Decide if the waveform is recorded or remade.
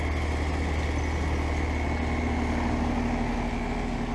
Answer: recorded